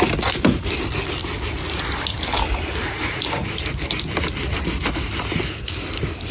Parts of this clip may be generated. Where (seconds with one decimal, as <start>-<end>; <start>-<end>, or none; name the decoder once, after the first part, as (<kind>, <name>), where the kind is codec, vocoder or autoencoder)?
none